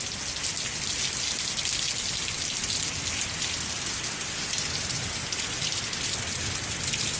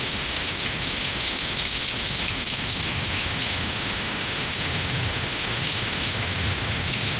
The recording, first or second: first